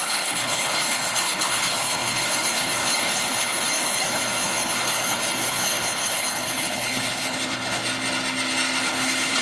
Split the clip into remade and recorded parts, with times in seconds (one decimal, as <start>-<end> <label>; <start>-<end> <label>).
0.0-7.8 remade; 7.8-8.8 recorded; 8.8-9.4 remade